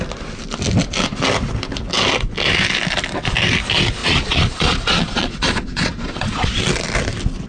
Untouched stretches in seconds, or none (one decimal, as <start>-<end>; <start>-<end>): 0.0-4.0; 6.6-7.5